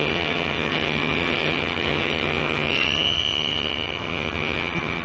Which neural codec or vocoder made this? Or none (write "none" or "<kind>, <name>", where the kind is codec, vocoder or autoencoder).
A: vocoder, HiFi-GAN